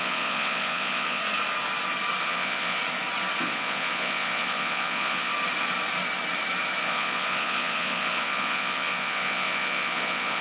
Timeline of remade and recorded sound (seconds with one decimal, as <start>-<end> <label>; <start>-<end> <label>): 0.0-1.2 remade; 1.2-2.2 recorded; 2.2-2.8 remade; 2.8-3.4 recorded; 3.4-5.3 remade; 5.3-6.8 recorded; 6.8-10.4 remade